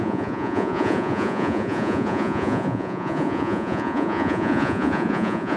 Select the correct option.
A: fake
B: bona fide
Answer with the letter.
A